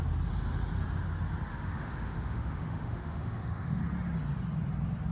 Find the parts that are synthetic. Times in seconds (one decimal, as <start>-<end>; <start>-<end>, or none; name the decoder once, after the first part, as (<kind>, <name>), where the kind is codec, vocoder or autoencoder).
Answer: 1.5-3.8 (autoencoder, DAC-VAE)